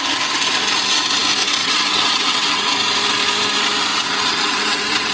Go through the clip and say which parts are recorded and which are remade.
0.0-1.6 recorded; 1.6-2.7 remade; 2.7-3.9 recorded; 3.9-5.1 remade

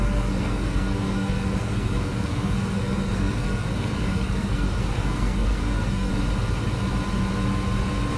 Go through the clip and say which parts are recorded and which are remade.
0.0-6.1 remade; 6.1-8.2 recorded

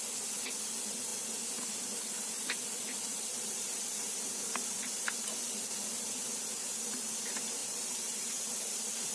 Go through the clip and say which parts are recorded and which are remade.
0.0-3.1 recorded; 3.1-5.6 remade; 5.6-7.6 recorded; 7.6-9.1 remade

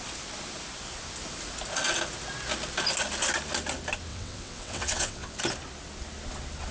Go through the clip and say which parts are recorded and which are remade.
0.0-4.1 recorded; 4.1-5.4 remade; 5.4-6.7 recorded

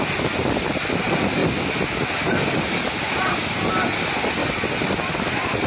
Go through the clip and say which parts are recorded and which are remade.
0.0-5.7 recorded

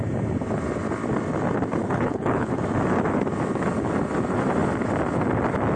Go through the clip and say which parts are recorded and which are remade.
0.0-1.8 recorded; 1.8-2.6 remade; 2.6-5.8 recorded